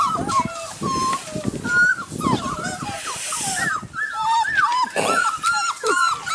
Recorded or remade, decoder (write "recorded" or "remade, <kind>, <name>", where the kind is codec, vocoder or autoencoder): recorded